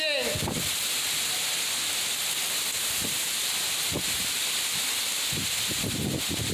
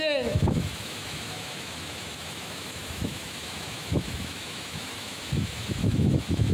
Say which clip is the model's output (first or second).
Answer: second